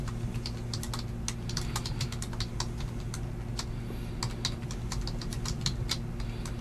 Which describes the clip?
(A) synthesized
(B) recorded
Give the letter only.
B